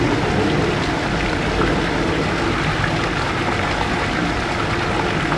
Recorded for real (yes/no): yes